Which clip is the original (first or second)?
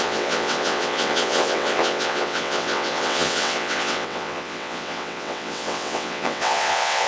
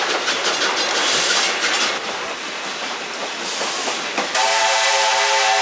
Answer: second